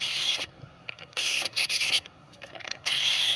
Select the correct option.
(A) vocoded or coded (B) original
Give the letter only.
A